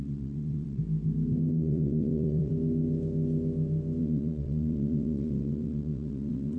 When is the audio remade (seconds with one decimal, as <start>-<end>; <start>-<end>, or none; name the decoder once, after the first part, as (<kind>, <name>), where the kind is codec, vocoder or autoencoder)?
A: 0.0-0.8 (vocoder, WaveNeXt); 1.5-2.5; 4.0-6.6